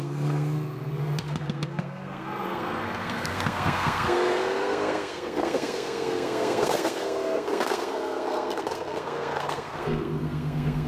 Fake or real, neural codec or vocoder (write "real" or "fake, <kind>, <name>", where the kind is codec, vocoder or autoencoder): fake, codec, SNAC